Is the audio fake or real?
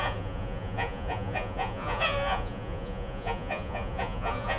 fake